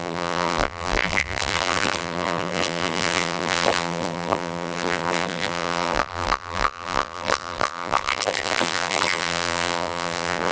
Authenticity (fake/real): fake